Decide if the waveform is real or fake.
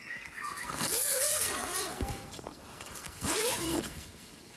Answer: fake